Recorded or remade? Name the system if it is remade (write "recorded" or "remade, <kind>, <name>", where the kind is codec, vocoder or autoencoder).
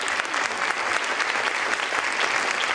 recorded